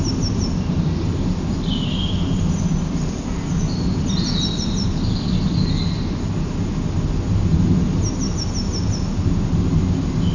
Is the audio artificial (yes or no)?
no